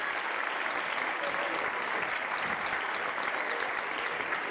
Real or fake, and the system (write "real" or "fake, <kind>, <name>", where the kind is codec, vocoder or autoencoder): real